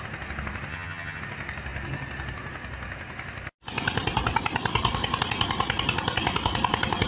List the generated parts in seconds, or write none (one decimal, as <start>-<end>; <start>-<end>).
0.7-1.2